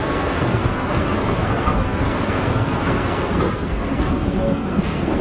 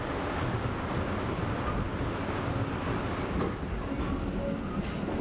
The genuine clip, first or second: second